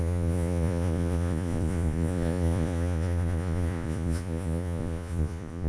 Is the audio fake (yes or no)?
yes